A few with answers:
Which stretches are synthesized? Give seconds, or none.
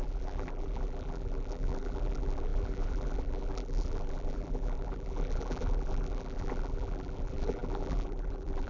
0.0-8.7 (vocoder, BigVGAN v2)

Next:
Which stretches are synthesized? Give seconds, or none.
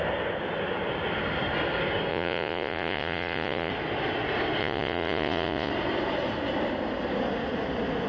2.1-3.7 (vocoder, Vocos); 4.6-5.7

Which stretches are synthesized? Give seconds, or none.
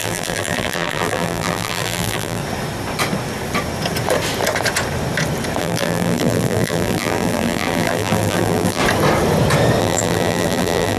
0.0-2.4 (vocoder, BigVGAN v2); 5.6-8.8; 9.8-11.0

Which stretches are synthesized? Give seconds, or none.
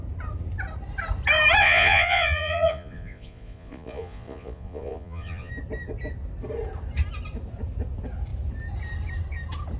1.6-5.5 (vocoder, Vocos)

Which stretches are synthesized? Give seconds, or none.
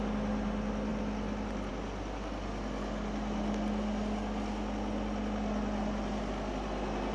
none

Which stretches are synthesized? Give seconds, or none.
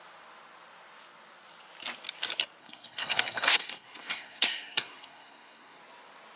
2.6-5.8 (codec, SNAC)